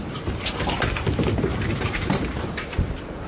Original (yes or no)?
no